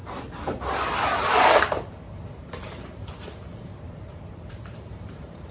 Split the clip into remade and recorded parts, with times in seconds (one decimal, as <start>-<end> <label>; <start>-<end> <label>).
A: 0.0-5.5 remade

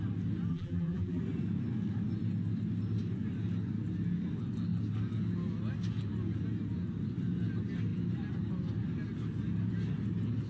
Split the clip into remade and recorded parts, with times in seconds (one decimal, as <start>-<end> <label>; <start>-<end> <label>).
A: 0.0-0.5 recorded; 0.5-1.2 remade; 1.2-10.5 recorded

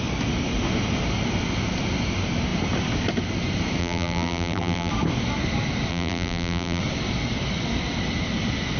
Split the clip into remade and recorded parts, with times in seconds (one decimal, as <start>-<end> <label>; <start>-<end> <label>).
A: 0.0-3.8 recorded; 3.8-4.9 remade; 4.9-5.9 recorded; 5.9-6.8 remade; 6.8-8.8 recorded

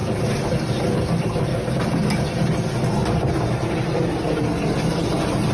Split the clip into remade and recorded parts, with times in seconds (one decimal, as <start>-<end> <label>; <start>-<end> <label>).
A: 0.0-5.5 recorded

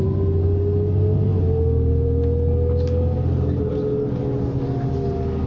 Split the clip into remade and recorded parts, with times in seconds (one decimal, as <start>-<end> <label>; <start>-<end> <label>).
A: 0.0-5.5 recorded